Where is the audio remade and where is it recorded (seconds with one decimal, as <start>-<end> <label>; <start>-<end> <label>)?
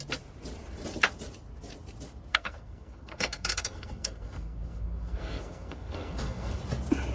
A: 0.0-2.3 recorded; 2.3-6.6 remade; 6.6-7.1 recorded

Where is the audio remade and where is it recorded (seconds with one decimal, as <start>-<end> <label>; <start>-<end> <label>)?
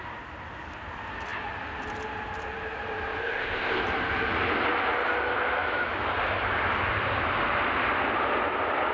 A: 0.0-3.2 recorded; 3.2-3.8 remade; 3.8-8.9 recorded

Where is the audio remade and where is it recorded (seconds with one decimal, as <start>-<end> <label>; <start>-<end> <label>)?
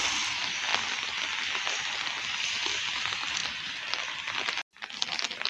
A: 0.0-3.4 recorded; 3.4-4.3 remade; 4.3-5.5 recorded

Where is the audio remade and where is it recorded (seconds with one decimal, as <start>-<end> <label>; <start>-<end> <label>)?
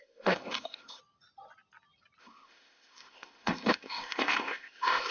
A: 0.0-1.0 remade; 1.0-2.2 recorded; 2.2-5.1 remade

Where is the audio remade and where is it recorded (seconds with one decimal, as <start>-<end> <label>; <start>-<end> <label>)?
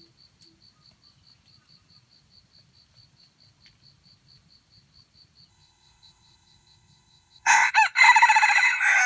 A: 0.0-5.5 recorded; 5.5-7.7 remade; 7.7-9.1 recorded